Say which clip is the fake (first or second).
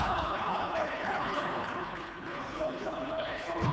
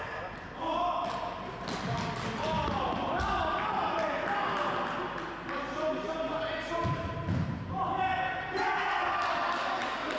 first